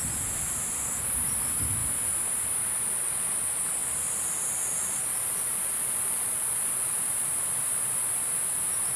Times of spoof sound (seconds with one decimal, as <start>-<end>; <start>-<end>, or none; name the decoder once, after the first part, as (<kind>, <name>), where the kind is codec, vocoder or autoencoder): 3.8-8.0 (vocoder, BigVGAN v2)